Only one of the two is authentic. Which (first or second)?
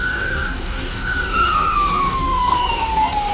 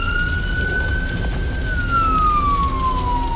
second